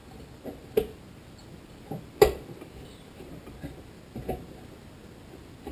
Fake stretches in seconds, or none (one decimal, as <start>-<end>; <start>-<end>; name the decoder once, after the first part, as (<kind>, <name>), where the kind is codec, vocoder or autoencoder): none